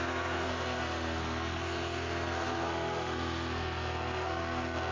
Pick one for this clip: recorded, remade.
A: remade